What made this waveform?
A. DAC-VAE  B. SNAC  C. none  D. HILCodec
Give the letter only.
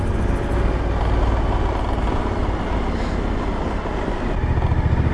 C